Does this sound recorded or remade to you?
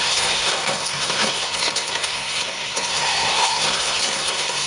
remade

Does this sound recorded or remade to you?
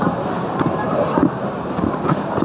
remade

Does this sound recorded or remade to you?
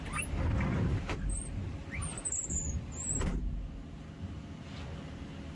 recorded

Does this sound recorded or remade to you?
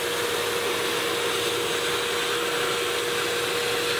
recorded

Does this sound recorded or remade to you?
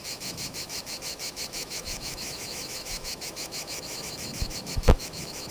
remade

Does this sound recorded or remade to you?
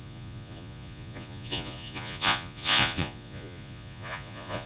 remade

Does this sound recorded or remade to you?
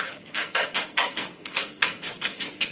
remade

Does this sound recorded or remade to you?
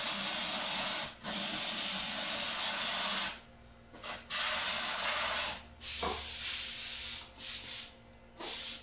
recorded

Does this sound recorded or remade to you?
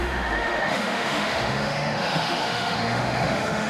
remade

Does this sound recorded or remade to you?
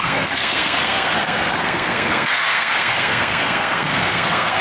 remade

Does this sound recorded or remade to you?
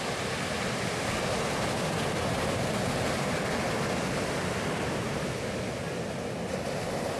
recorded